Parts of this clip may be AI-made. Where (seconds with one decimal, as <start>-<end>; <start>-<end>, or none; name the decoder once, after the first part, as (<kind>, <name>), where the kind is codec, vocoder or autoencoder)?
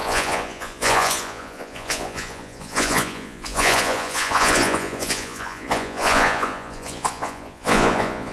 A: 0.0-8.3 (vocoder, Vocos)